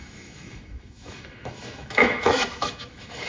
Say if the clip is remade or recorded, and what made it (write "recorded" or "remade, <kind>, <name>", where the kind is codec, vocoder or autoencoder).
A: remade, autoencoder, DAC-VAE